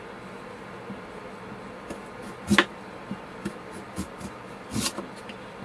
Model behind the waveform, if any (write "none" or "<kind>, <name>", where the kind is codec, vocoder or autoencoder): none